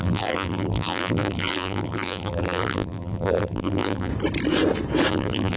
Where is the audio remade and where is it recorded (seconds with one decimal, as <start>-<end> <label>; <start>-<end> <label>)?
0.0-4.1 remade; 4.1-5.1 recorded; 5.1-5.6 remade